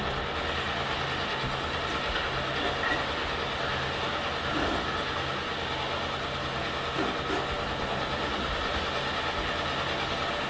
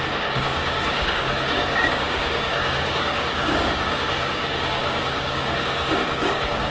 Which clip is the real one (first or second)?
first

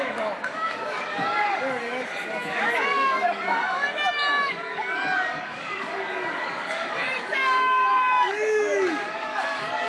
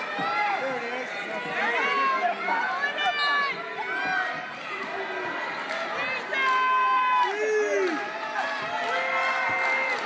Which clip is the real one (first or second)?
second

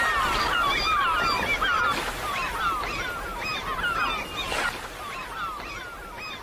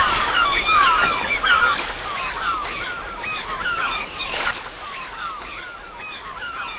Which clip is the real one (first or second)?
first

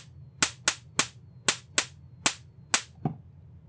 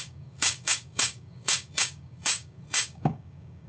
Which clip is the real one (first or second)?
first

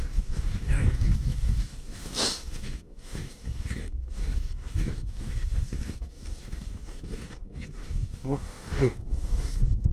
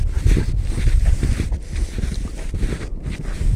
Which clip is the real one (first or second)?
second